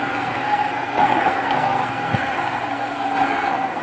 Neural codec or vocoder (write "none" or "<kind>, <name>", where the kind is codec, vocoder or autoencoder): codec, SNAC